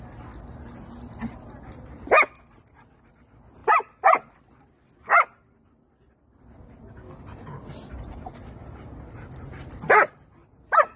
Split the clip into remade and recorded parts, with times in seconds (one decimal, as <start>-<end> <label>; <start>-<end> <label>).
0.0-11.0 recorded